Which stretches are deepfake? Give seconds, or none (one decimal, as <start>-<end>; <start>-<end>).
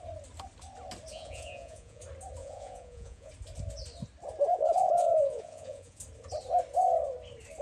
1.1-2.0; 2.4-3.3; 4.5-6.0